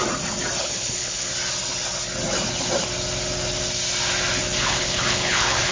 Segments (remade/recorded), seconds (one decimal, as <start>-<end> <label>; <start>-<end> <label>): 0.0-0.6 recorded; 0.6-1.3 remade; 1.3-4.6 recorded; 4.6-5.7 remade